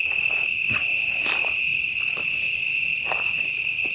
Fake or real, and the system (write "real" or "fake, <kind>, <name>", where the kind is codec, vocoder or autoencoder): real